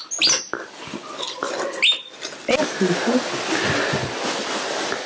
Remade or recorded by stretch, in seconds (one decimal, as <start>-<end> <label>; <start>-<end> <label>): 0.0-5.1 recorded